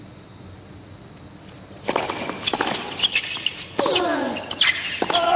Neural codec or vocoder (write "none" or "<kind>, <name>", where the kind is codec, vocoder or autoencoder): none